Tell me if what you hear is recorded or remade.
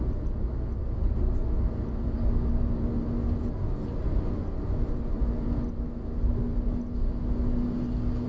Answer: recorded